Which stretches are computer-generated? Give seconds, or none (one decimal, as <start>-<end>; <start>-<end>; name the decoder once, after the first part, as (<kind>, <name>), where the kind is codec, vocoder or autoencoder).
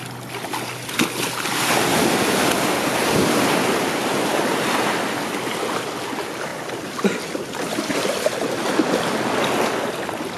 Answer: none